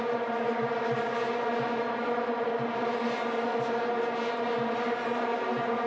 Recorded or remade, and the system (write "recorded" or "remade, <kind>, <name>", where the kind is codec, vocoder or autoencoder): recorded